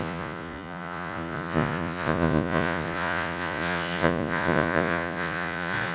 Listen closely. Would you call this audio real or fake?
fake